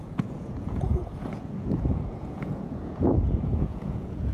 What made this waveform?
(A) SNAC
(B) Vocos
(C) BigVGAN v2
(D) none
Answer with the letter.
B